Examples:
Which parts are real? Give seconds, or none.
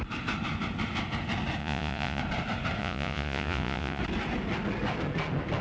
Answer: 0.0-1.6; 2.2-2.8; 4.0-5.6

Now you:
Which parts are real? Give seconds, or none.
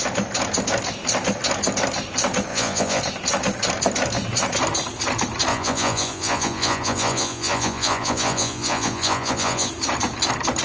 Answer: 0.0-2.5; 3.0-5.5; 9.7-10.6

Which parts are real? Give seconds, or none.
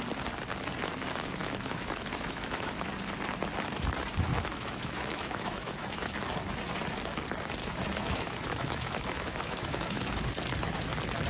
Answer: 0.0-1.4; 2.9-4.3; 6.1-7.6; 10.3-11.3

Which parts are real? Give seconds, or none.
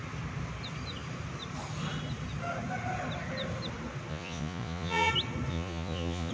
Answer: 0.0-4.1; 5.1-5.5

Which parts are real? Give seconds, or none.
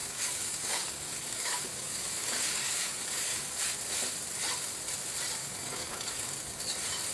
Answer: 3.6-5.4; 6.6-7.1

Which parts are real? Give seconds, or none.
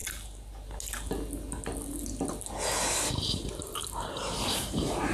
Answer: 0.0-3.1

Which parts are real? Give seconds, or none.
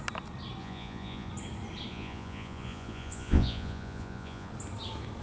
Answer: 0.0-0.6; 1.3-1.9; 4.5-5.2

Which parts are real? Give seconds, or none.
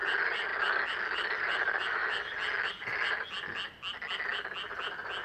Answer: 0.0-5.2